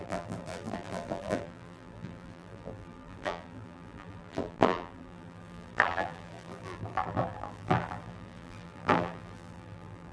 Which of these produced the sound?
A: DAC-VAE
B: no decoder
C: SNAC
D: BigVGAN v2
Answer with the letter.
D